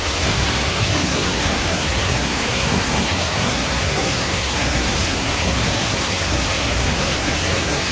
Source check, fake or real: fake